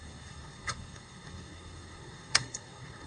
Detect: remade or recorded remade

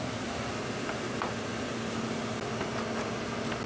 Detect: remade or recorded recorded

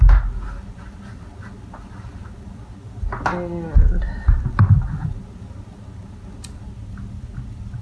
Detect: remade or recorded recorded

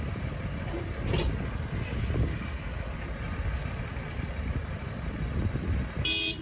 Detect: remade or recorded recorded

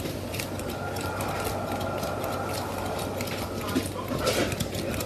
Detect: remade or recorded recorded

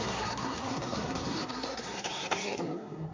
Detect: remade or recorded remade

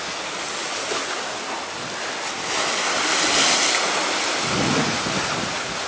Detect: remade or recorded recorded